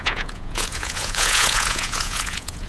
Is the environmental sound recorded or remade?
remade